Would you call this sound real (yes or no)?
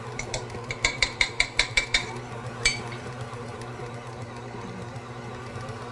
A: no